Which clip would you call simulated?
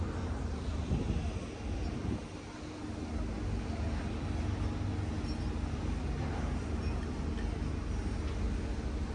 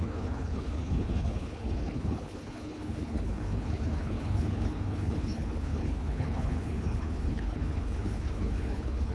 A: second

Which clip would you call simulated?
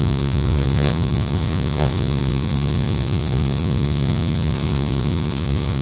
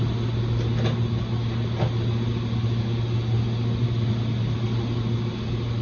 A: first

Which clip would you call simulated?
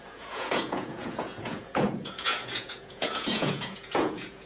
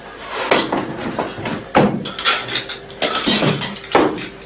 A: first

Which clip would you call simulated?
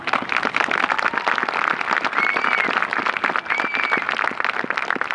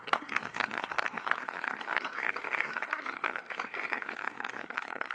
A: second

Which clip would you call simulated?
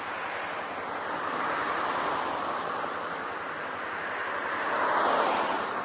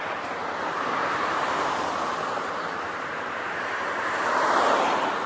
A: second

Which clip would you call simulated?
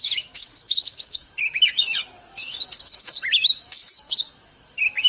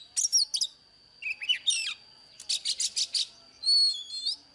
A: first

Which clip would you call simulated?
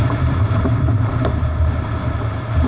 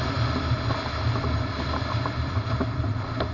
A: first